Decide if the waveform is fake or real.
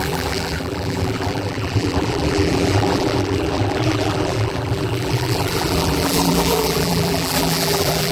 fake